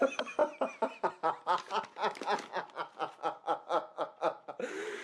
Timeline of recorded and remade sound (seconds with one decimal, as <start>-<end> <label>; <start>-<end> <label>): 0.0-5.0 recorded